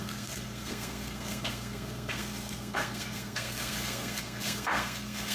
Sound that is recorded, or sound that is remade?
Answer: remade